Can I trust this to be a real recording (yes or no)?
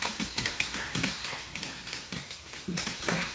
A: no